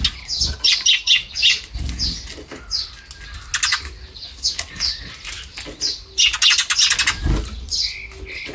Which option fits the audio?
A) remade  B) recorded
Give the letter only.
B